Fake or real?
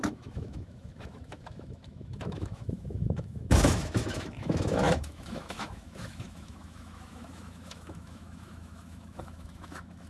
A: fake